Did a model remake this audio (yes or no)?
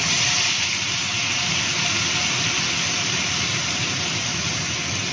no